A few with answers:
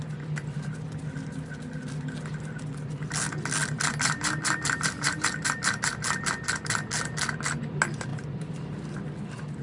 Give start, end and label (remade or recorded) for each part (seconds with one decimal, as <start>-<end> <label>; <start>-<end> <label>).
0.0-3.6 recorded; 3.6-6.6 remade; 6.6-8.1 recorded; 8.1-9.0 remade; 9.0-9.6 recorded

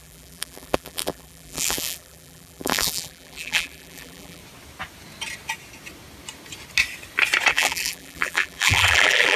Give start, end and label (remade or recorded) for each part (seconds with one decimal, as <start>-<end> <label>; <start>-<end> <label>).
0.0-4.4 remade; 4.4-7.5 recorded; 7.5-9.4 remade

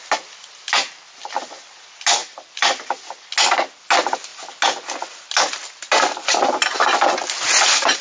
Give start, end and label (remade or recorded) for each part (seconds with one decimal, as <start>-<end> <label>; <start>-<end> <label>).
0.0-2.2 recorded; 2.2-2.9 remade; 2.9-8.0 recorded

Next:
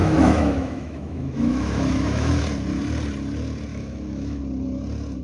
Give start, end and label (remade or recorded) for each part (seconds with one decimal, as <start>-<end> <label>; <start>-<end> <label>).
0.0-2.4 remade; 2.4-3.7 recorded; 3.7-4.4 remade; 4.4-5.2 recorded

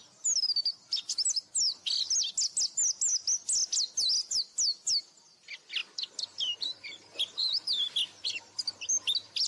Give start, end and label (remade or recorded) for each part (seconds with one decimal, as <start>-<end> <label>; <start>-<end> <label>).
0.0-9.5 recorded

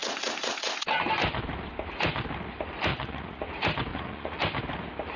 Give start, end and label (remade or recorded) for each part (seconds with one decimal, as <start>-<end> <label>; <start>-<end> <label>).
0.0-0.8 remade; 0.8-2.9 recorded; 2.9-3.4 remade; 3.4-3.9 recorded; 3.9-4.4 remade; 4.4-5.2 recorded

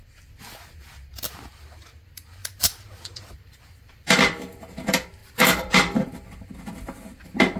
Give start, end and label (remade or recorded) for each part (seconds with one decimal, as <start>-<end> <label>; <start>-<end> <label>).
0.0-2.4 recorded; 2.4-4.8 remade; 4.8-5.2 recorded; 5.2-6.3 remade; 6.3-7.6 recorded

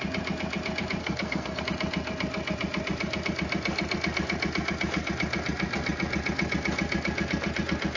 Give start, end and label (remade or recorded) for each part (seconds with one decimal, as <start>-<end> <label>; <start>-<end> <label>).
0.0-1.0 recorded; 1.0-1.6 remade; 1.6-8.0 recorded